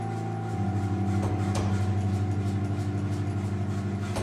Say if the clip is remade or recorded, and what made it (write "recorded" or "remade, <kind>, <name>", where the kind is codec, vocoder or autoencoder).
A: recorded